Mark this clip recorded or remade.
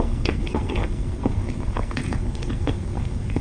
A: remade